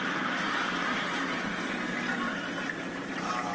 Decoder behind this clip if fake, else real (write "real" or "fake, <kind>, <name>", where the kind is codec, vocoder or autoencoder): real